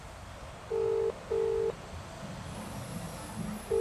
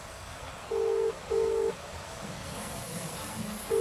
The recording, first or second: first